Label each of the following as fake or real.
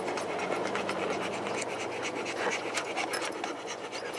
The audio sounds fake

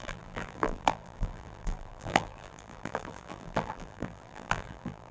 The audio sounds fake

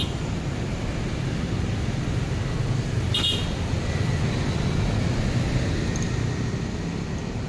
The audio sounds real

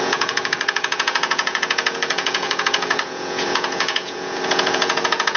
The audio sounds fake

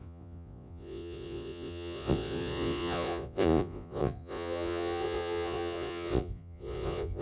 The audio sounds fake